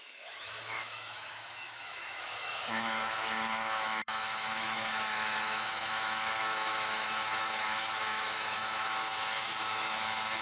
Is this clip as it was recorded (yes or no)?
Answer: no